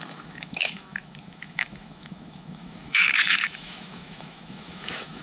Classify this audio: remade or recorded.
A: remade